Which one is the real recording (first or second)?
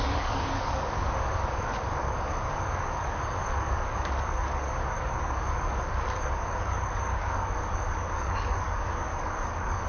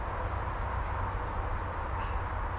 second